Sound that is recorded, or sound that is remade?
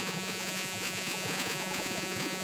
remade